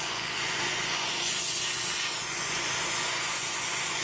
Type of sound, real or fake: fake